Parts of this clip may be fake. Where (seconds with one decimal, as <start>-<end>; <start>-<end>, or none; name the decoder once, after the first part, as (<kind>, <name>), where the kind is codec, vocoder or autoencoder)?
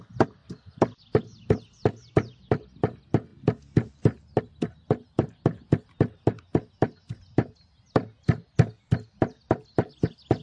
none